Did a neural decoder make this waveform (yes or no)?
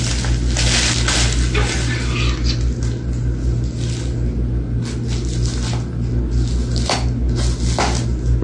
no